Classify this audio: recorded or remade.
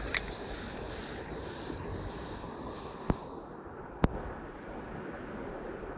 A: recorded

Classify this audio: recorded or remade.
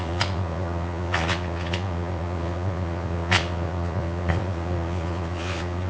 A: remade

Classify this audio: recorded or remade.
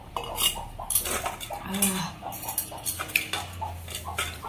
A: recorded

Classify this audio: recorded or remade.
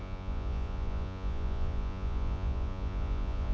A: remade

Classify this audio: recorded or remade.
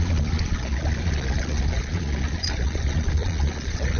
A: remade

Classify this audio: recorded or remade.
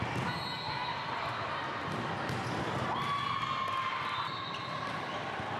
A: recorded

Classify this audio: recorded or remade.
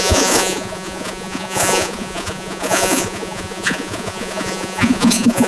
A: remade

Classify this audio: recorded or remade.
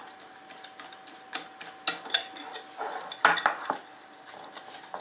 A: recorded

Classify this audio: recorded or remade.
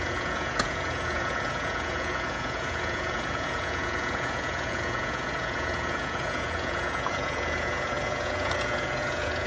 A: remade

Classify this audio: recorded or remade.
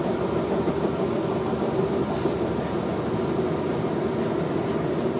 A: recorded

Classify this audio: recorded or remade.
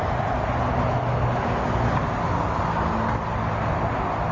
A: recorded